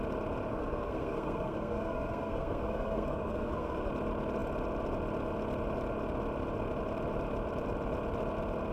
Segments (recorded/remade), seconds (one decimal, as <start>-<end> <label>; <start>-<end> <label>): 0.0-0.5 recorded; 0.5-3.9 remade; 3.9-8.7 recorded